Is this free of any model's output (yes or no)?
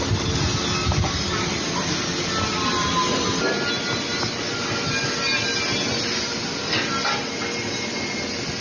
yes